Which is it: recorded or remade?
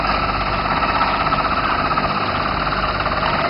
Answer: recorded